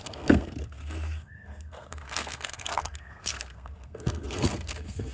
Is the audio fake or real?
fake